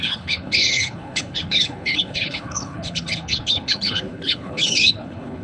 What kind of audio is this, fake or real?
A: fake